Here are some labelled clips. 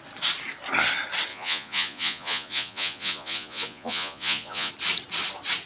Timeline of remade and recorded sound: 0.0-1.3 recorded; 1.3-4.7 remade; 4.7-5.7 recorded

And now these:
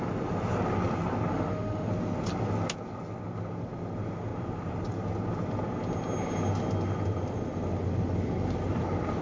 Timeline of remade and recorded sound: 0.0-1.3 recorded; 1.3-1.9 remade; 1.9-9.2 recorded